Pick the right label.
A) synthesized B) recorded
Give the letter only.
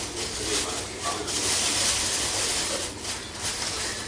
B